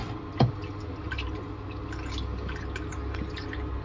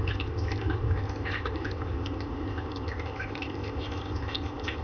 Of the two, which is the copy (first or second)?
second